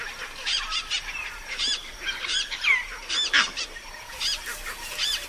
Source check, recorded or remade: remade